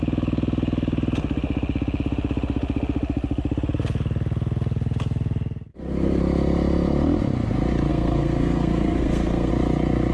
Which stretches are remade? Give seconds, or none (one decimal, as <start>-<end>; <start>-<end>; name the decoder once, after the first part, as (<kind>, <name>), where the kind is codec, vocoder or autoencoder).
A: 5.7-6.2 (codec, SNAC); 7.9-9.5